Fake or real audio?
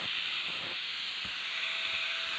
real